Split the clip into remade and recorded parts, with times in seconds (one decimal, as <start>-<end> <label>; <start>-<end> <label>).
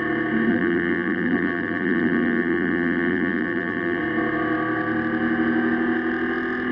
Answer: 0.0-0.5 recorded; 0.5-4.0 remade; 4.0-6.7 recorded